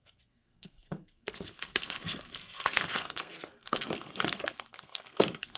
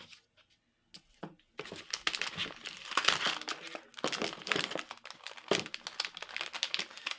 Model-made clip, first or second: first